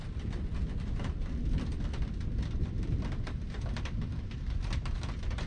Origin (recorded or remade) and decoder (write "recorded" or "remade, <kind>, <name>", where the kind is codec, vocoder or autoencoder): remade, vocoder, BigVGAN v2